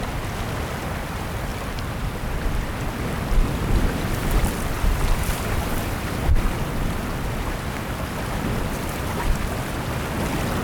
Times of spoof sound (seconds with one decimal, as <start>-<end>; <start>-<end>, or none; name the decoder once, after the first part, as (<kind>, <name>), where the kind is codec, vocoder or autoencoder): 1.5-2.0 (vocoder, BigVGAN v2); 4.4-6.0